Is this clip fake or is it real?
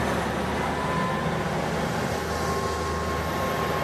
real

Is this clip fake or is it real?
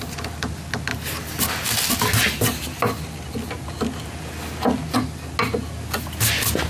real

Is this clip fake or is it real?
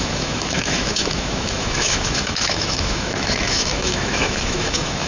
fake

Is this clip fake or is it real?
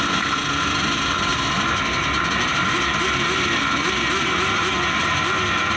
real